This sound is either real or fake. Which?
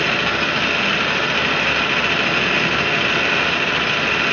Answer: real